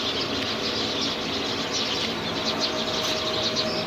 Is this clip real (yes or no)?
yes